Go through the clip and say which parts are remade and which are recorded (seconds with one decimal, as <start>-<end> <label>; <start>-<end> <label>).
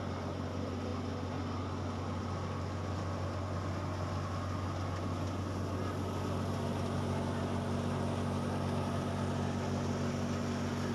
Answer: 0.0-10.9 recorded